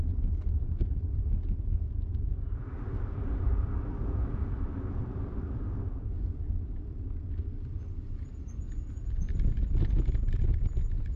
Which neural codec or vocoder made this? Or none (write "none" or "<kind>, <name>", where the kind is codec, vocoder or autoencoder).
none